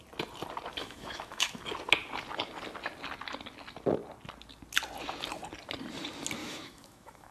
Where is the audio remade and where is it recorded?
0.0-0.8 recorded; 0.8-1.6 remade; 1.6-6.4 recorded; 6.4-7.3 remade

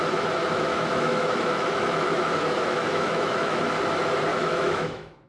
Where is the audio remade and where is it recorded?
0.0-0.4 recorded; 0.4-3.6 remade; 3.6-4.3 recorded; 4.3-5.3 remade

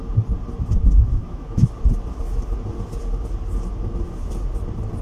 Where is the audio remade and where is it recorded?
0.0-1.1 recorded; 1.1-1.7 remade; 1.7-5.0 recorded

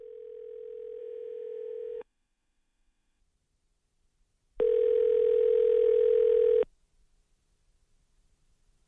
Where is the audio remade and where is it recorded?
0.0-1.0 recorded; 1.0-3.2 remade; 3.2-8.9 recorded

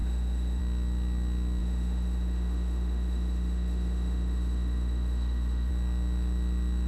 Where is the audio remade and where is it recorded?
0.0-0.6 remade; 0.6-1.6 recorded; 1.6-5.7 remade; 5.7-6.9 recorded

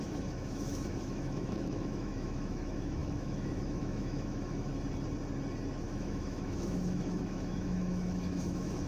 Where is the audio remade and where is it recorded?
0.0-4.7 remade; 4.7-5.7 recorded; 5.7-8.9 remade

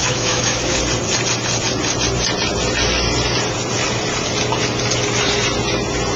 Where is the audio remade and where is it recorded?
0.0-0.8 remade; 0.8-6.2 recorded

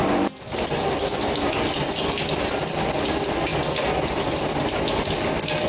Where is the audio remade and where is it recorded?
0.0-5.7 recorded